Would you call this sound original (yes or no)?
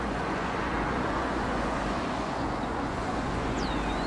no